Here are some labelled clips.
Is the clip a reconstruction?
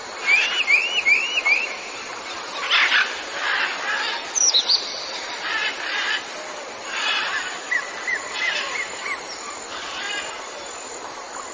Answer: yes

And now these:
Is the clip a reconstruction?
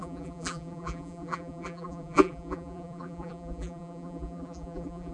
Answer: yes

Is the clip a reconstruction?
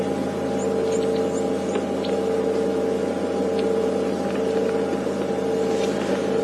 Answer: no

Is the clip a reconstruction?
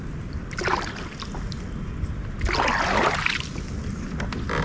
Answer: no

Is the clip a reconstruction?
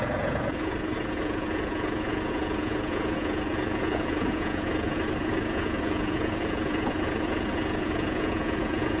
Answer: yes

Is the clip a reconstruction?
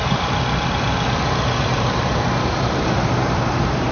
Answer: yes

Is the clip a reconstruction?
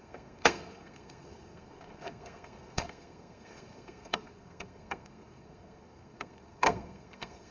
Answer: yes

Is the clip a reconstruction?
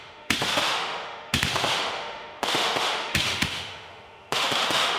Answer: yes